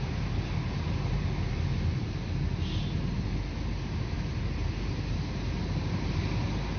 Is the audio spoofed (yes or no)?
no